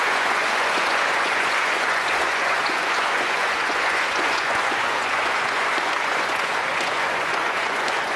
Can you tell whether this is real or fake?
fake